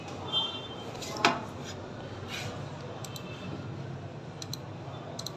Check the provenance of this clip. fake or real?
real